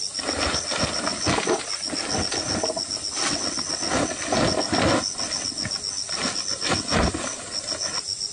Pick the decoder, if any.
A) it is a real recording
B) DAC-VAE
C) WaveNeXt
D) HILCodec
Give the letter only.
A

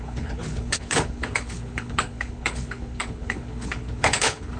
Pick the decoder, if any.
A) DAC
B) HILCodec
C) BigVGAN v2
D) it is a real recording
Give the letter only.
B